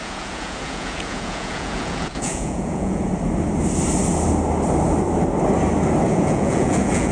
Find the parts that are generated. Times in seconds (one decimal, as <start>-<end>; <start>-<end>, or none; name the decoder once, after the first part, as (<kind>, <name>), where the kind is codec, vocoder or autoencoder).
0.0-3.1 (vocoder, Vocos); 6.1-7.1